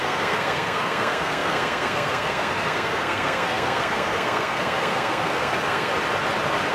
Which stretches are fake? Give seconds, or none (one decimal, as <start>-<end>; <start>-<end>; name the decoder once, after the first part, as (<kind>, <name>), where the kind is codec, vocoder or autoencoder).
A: 0.0-5.9 (codec, SNAC)